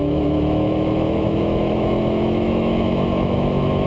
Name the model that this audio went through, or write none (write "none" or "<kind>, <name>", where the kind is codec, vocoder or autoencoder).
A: autoencoder, DAC-VAE